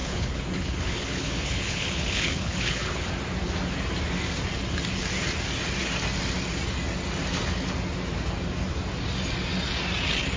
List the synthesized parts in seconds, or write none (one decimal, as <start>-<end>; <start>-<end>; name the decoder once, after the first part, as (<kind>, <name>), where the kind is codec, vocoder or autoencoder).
0.0-3.1 (codec, HILCodec)